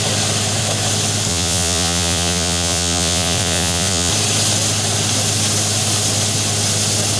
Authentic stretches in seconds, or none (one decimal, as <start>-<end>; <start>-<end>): 0.0-1.3; 4.1-7.2